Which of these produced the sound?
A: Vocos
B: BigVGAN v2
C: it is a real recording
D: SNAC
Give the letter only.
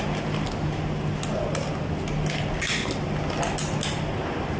C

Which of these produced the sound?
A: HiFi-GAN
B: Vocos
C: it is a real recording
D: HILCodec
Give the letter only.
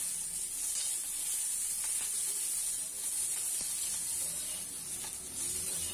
C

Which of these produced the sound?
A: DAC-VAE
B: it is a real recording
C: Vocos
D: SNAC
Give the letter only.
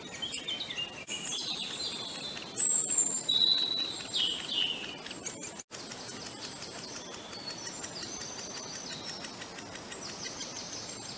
B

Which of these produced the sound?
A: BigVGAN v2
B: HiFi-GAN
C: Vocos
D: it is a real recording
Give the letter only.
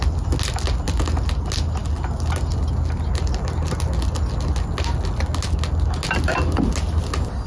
D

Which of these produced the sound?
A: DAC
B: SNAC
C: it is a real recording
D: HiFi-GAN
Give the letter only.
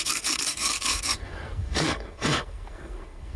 B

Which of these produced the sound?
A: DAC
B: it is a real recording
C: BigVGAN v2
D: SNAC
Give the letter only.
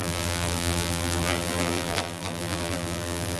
C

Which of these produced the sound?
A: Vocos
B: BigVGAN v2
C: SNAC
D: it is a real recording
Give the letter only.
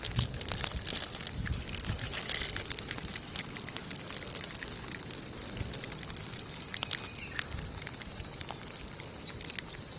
D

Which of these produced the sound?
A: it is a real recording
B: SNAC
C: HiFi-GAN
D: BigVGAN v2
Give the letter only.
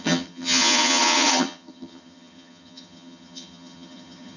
C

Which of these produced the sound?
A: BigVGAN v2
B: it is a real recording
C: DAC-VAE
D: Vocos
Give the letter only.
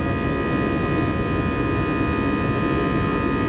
B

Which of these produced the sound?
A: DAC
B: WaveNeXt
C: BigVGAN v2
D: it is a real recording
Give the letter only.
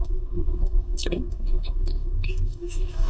A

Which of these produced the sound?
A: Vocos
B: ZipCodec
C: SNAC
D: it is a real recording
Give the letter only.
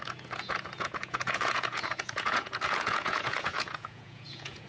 A